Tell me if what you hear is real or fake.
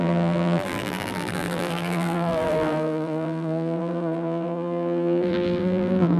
fake